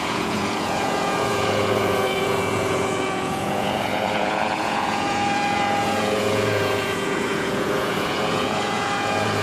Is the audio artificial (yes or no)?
yes